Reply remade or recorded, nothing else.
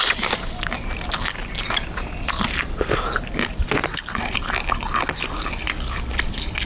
recorded